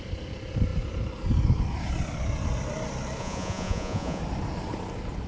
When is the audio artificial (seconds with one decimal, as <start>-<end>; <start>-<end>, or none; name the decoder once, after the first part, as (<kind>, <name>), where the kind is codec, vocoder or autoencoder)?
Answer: 3.2-4.2 (vocoder, Vocos)